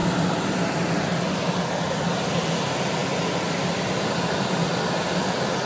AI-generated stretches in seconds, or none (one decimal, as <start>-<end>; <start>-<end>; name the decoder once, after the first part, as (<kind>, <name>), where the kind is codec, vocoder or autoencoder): none